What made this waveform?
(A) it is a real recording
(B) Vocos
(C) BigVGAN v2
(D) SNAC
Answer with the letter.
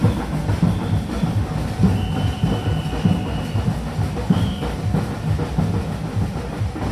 A